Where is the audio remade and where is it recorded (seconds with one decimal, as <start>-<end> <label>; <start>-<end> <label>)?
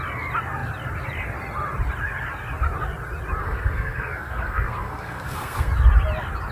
0.0-3.4 recorded; 3.4-5.7 remade; 5.7-6.5 recorded